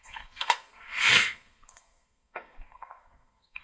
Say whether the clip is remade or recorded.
remade